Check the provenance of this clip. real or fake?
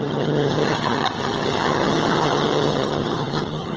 fake